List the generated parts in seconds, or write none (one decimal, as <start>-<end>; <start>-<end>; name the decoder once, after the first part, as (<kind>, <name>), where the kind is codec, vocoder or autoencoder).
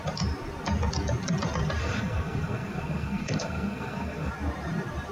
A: 1.8-4.3 (codec, SNAC)